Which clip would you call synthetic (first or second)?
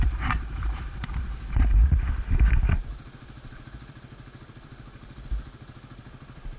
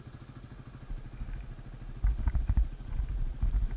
first